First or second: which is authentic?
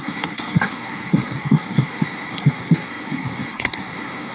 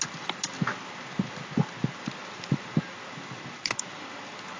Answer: second